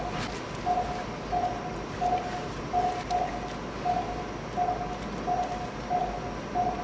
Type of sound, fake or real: real